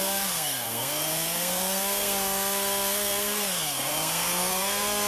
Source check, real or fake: fake